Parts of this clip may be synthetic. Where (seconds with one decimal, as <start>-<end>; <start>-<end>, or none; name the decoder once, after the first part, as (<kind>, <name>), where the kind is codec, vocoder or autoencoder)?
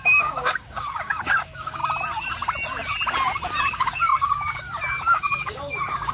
0.0-1.8 (codec, DAC); 3.6-6.1